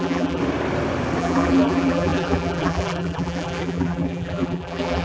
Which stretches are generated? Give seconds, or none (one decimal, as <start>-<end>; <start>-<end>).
0.0-0.4; 1.2-5.0